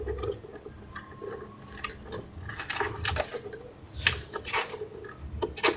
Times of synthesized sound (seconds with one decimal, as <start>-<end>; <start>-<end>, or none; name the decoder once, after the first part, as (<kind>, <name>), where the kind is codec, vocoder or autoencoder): none